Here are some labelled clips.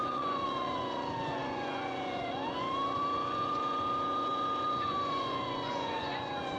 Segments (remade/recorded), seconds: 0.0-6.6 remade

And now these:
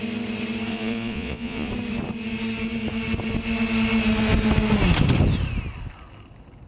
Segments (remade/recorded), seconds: 0.0-0.7 recorded; 0.7-1.7 remade; 1.7-6.7 recorded

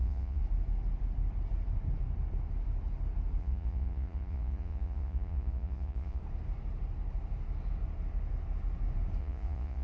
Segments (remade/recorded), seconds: 0.0-0.4 remade; 0.4-3.4 recorded; 3.4-6.2 remade; 6.2-9.2 recorded; 9.2-9.8 remade